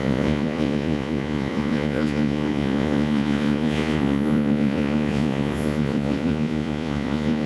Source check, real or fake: fake